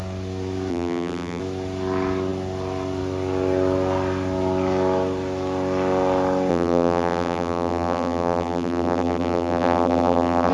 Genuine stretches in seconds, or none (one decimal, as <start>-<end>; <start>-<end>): 0.0-0.7; 1.4-6.5